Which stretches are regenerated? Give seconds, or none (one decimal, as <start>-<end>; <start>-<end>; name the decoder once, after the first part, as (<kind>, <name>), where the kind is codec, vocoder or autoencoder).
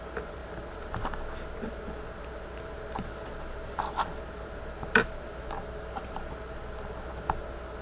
0.0-0.4 (vocoder, BigVGAN v2); 5.1-7.8